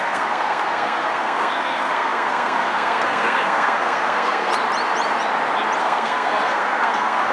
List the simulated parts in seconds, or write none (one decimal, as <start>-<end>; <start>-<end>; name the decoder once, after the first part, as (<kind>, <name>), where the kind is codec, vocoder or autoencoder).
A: 0.0-4.5 (codec, SNAC); 5.8-7.3

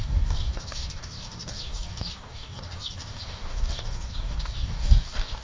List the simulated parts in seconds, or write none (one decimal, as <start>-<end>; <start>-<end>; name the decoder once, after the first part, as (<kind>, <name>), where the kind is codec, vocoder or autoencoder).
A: 0.0-5.4 (codec, DAC)

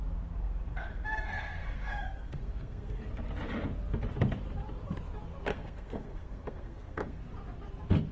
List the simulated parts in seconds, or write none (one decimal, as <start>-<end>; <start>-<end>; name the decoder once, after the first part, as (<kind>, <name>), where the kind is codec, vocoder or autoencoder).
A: 0.4-3.0 (codec, SNAC); 5.5-7.2

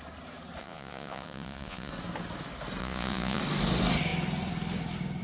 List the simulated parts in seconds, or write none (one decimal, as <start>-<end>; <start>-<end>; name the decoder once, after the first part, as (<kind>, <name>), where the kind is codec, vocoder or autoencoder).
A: 0.6-1.9 (vocoder, Vocos); 2.8-3.4

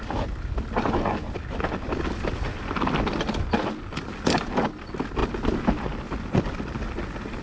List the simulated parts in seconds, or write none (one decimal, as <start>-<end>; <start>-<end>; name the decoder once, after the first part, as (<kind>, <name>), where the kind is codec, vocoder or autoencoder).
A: none

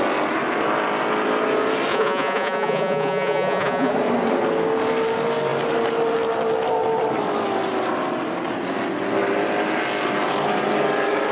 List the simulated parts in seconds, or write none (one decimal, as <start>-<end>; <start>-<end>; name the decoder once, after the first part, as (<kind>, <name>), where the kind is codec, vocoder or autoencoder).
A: 1.9-3.9 (vocoder, Vocos)

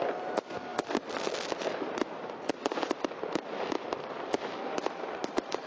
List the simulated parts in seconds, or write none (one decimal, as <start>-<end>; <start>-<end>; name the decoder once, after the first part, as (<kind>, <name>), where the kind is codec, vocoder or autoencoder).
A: none

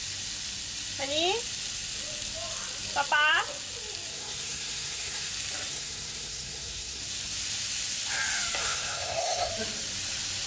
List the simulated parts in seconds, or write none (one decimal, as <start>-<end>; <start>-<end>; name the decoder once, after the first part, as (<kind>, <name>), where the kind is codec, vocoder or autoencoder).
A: 4.1-5.3 (codec, SNAC); 5.7-7.0; 8.6-9.5